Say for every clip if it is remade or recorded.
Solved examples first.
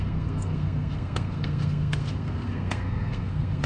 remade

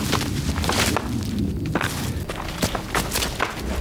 recorded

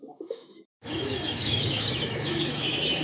remade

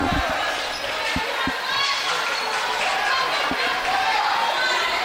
recorded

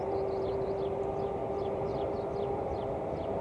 remade